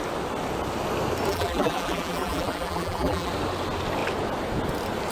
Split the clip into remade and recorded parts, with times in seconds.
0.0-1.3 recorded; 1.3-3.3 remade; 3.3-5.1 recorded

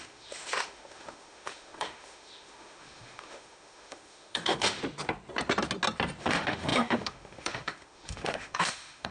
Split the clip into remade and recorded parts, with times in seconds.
0.0-4.8 remade; 4.8-6.2 recorded; 6.2-9.1 remade

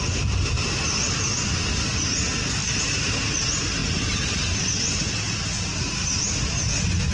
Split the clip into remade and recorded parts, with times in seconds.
0.0-0.6 recorded; 0.6-1.4 remade; 1.4-2.6 recorded; 2.6-3.1 remade; 3.1-3.8 recorded; 3.8-5.1 remade; 5.1-7.1 recorded

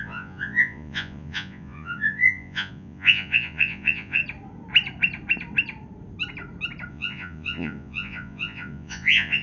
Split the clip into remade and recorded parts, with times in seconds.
0.0-4.2 remade; 4.2-6.9 recorded; 6.9-9.4 remade

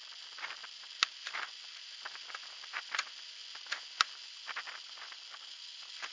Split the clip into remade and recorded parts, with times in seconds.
0.0-6.1 recorded

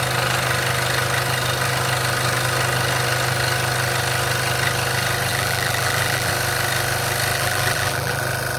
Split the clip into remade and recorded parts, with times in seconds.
0.0-5.3 recorded; 5.3-6.3 remade; 6.3-7.3 recorded; 7.3-8.2 remade; 8.2-8.6 recorded